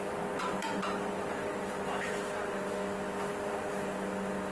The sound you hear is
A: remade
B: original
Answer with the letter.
B